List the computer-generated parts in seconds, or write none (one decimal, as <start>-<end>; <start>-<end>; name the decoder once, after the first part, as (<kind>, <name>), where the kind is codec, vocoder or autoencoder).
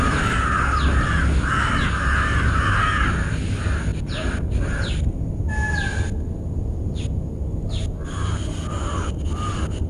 none